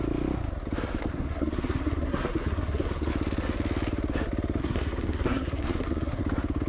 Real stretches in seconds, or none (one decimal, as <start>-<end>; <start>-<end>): 0.0-1.1; 3.1-4.6; 6.2-6.7